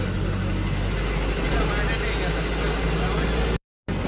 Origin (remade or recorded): recorded